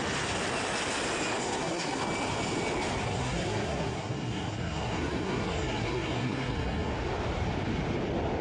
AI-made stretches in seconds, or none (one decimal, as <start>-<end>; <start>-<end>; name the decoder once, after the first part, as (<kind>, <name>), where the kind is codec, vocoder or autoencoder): 1.4-2.0 (codec, SNAC); 3.0-6.9